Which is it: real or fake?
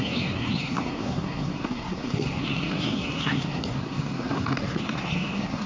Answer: fake